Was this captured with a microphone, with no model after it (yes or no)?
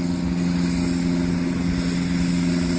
yes